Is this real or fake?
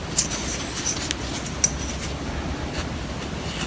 real